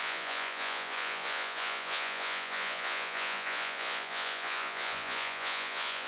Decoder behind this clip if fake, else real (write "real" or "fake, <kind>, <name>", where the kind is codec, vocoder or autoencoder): fake, vocoder, Vocos